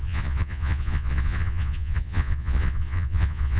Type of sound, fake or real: fake